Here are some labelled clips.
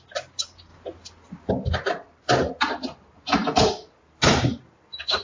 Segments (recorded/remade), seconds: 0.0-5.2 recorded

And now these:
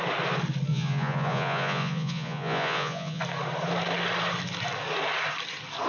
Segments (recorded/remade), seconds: 0.0-0.7 recorded; 0.7-3.2 remade; 3.2-5.9 recorded

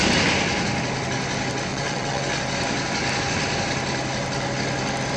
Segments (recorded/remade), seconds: 0.0-1.7 recorded; 1.7-2.4 remade; 2.4-5.2 recorded

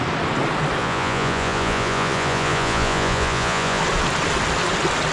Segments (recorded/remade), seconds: 0.0-0.8 recorded; 0.8-3.8 remade; 3.8-5.1 recorded

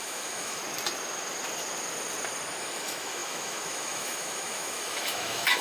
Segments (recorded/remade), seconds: 0.0-0.6 remade; 0.6-2.6 recorded; 2.6-5.6 remade

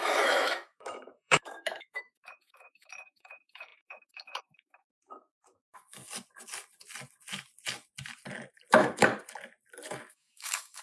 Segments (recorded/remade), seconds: 0.0-6.0 remade; 6.0-8.7 recorded; 8.7-9.1 remade; 9.1-10.1 recorded; 10.1-10.8 remade

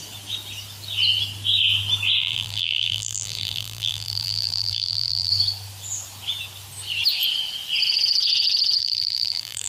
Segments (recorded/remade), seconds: 0.0-2.2 recorded; 2.2-5.3 remade; 5.3-8.8 recorded; 8.8-9.7 remade